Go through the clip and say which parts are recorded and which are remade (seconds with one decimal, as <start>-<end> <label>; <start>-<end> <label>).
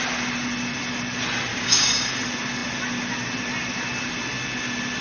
0.0-1.5 recorded; 1.5-2.1 remade; 2.1-5.0 recorded